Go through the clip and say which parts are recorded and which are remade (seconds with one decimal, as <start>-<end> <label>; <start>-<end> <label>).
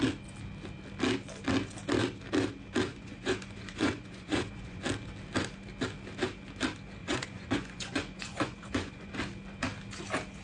0.0-2.9 recorded; 2.9-4.8 remade; 4.8-7.0 recorded; 7.0-9.1 remade; 9.1-10.4 recorded